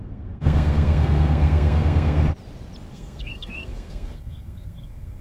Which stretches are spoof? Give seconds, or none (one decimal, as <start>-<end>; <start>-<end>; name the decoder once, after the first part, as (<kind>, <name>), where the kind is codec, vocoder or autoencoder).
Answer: 0.0-2.2 (codec, SNAC); 2.9-5.2